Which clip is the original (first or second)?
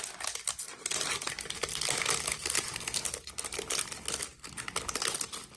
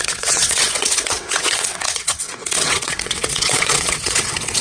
first